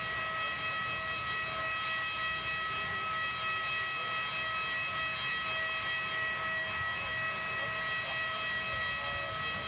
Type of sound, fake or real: real